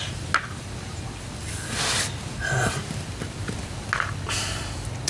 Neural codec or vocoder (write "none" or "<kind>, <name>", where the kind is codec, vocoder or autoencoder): none